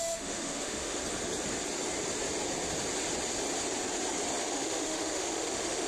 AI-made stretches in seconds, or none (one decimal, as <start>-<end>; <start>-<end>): 0.0-1.0; 4.5-5.9